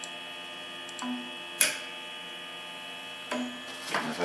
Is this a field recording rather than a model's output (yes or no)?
yes